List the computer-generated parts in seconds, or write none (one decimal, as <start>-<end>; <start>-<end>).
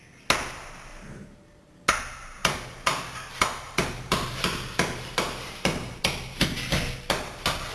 0.9-1.7; 2.4-6.0